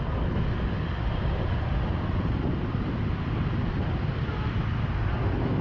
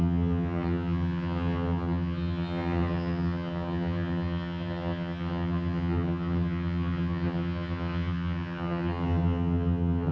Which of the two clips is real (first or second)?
first